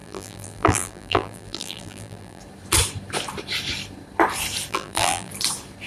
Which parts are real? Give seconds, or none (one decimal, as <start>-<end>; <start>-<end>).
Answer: 2.4-4.7; 5.3-5.9